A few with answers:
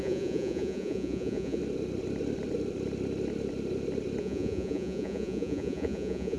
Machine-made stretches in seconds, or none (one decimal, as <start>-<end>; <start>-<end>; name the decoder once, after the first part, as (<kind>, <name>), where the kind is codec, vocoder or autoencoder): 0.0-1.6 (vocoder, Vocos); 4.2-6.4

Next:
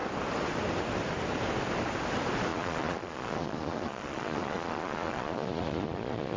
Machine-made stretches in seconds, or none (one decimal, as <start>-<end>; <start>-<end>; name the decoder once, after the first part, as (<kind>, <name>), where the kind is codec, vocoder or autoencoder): 2.5-6.4 (vocoder, Vocos)

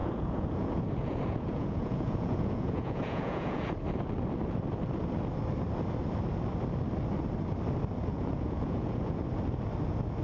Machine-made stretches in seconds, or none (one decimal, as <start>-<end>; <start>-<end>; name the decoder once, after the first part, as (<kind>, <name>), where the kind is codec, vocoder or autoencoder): 0.0-3.6 (vocoder, Vocos); 8.1-9.2

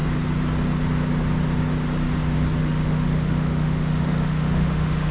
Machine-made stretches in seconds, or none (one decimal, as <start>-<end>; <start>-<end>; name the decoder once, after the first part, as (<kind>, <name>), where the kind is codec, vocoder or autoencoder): 2.6-5.1 (autoencoder, DAC-VAE)

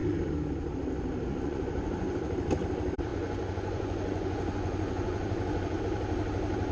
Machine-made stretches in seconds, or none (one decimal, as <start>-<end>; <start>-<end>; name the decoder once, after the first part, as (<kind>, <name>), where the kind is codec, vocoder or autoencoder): 1.3-2.2 (vocoder, Vocos); 3.1-5.8

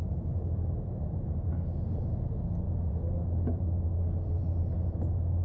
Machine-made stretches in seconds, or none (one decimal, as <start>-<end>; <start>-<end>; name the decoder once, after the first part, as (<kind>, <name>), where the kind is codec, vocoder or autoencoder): none

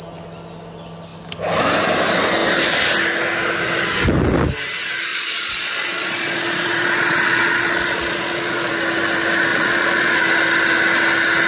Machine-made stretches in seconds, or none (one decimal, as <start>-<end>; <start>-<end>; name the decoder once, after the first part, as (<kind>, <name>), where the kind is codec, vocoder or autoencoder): 5.1-8.7 (vocoder, Vocos); 9.5-10.2